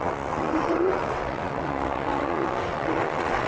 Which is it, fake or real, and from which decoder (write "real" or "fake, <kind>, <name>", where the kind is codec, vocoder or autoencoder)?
fake, vocoder, WaveNeXt